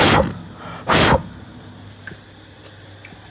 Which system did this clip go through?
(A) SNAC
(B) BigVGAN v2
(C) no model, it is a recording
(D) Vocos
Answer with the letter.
C